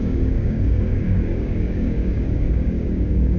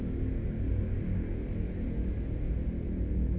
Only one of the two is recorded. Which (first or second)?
second